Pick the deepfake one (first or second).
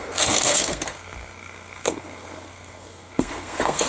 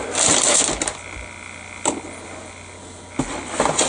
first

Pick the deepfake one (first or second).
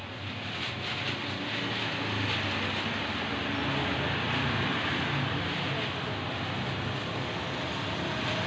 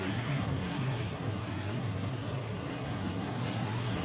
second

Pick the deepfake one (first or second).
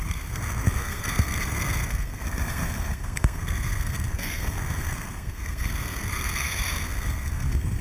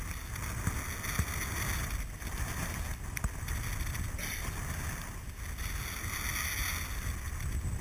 first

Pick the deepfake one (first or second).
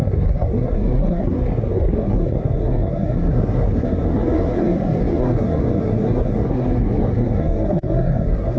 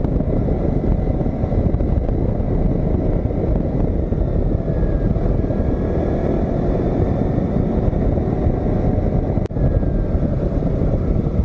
first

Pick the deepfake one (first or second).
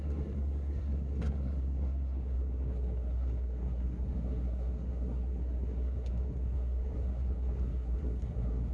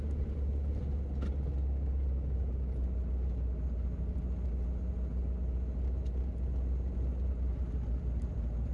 first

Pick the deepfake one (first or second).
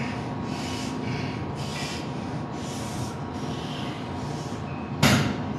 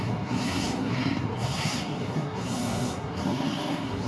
second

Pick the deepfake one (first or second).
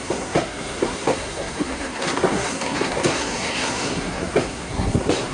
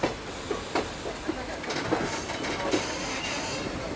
first